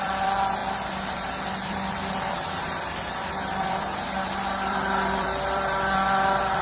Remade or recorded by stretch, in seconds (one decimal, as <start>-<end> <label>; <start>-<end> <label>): 0.0-6.6 remade